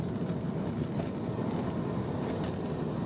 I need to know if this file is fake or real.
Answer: real